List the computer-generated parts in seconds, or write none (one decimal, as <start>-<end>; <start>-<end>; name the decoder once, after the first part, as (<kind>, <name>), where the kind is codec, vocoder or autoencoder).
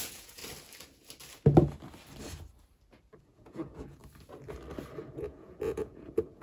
0.0-0.4 (vocoder, Vocos); 3.2-4.0; 5.0-6.4